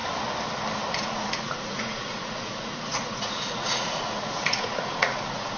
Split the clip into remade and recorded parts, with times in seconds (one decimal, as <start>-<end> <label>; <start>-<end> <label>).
0.0-1.0 recorded; 1.0-5.6 remade